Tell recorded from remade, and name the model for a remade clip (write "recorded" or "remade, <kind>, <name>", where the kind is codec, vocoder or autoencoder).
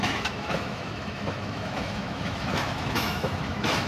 remade, autoencoder, DAC-VAE